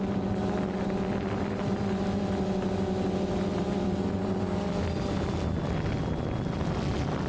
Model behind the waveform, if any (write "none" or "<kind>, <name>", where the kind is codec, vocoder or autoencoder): none